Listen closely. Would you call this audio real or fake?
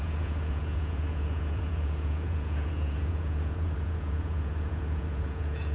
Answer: fake